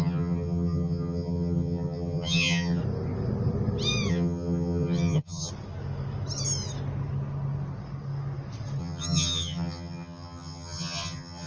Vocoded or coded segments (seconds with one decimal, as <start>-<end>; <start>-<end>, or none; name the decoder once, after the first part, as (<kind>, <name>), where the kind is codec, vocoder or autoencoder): 0.0-2.8 (vocoder, HiFi-GAN); 4.1-5.5; 8.8-11.5